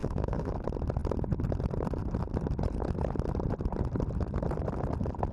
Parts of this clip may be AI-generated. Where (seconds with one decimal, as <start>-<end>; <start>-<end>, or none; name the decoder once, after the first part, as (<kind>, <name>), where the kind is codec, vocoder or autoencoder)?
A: 0.0-0.5 (autoencoder, DAC-VAE)